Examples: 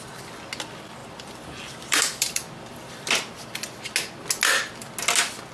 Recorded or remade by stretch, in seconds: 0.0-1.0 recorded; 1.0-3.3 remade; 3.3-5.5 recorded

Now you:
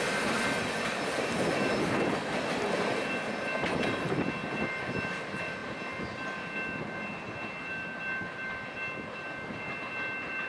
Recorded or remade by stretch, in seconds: 0.0-10.5 recorded

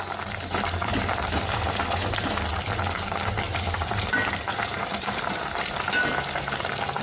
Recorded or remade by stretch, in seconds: 0.0-0.9 recorded; 0.9-2.1 remade; 2.1-3.5 recorded; 3.5-4.1 remade; 4.1-4.5 recorded; 4.5-5.4 remade; 5.4-7.0 recorded